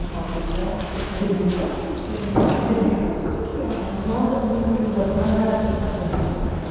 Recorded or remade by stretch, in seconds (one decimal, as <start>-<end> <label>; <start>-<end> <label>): 0.0-0.6 recorded; 0.6-1.6 remade; 1.6-3.5 recorded; 3.5-5.6 remade; 5.6-6.7 recorded